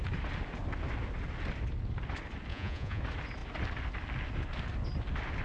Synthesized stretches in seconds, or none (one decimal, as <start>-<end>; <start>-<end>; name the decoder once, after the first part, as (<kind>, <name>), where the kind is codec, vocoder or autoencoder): 2.5-3.0 (vocoder, Vocos)